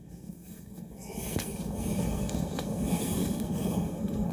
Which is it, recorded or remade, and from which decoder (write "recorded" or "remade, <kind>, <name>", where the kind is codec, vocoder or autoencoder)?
remade, codec, SNAC